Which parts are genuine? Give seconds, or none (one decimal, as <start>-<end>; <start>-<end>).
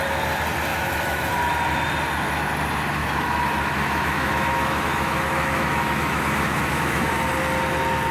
0.0-0.7; 1.3-3.0; 7.1-8.1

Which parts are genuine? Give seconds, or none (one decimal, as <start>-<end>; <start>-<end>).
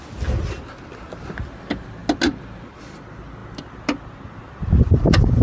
0.0-5.4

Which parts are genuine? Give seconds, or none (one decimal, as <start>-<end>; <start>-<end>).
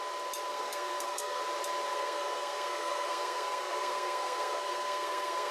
0.0-0.5; 1.4-1.9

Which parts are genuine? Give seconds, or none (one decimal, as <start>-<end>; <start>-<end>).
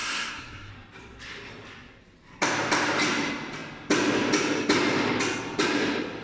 0.7-6.2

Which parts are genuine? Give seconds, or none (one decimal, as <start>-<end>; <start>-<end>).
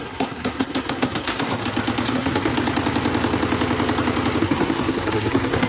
1.6-2.1; 2.5-4.4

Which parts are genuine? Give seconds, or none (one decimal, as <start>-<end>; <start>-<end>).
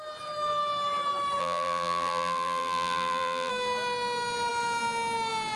0.0-1.4; 3.5-5.6